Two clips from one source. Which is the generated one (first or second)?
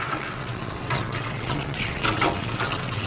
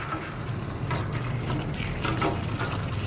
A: first